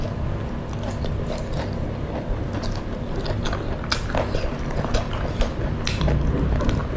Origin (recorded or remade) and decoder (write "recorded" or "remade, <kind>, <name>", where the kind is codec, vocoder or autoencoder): recorded